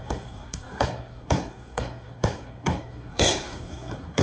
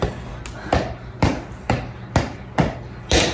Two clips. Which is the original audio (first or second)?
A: second